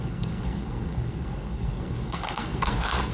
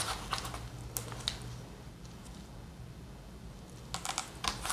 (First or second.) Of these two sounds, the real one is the second